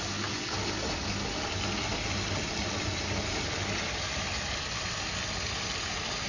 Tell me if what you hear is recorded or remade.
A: recorded